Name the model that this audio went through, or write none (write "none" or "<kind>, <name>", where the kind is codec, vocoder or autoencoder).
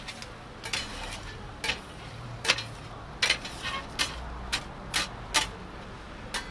none